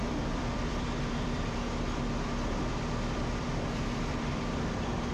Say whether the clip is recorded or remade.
remade